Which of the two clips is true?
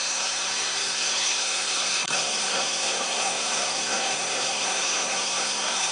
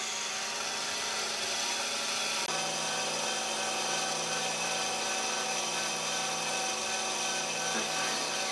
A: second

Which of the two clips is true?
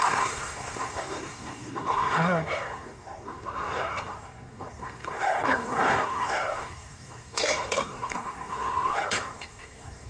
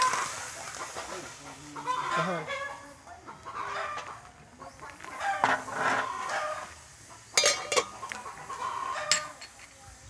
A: second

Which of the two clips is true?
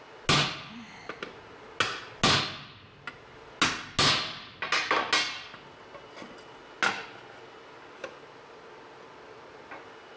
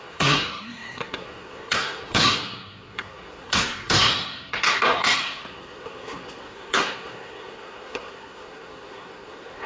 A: first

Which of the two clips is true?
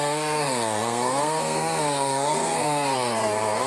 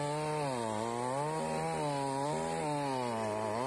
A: second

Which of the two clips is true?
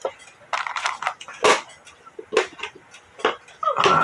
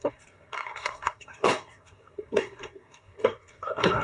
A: first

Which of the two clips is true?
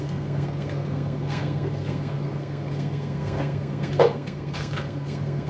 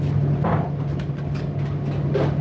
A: second